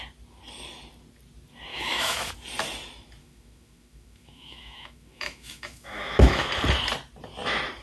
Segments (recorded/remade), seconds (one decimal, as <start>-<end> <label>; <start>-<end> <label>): 0.0-1.7 recorded; 1.7-2.3 remade; 2.3-3.2 recorded; 3.2-6.5 remade; 6.5-7.8 recorded